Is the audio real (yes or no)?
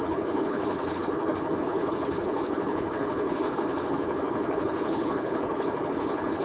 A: no